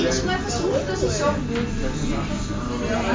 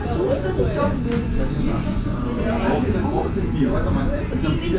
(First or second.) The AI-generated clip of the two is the second